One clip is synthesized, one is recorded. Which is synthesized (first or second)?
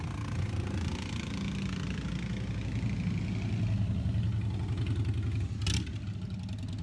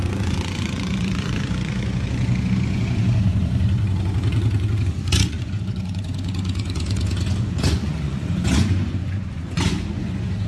second